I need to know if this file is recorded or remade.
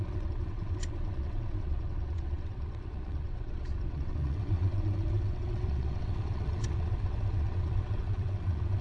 remade